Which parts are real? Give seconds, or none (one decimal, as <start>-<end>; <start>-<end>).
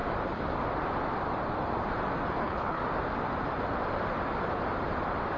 0.0-2.4; 2.8-5.4